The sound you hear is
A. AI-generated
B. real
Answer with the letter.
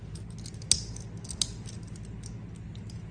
B